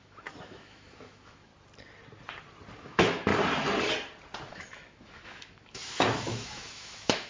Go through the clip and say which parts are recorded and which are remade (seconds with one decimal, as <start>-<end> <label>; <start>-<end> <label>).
0.0-1.5 remade; 1.5-2.8 recorded; 2.8-3.3 remade; 3.3-4.5 recorded; 4.5-7.3 remade